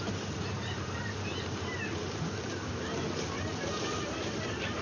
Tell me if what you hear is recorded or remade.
remade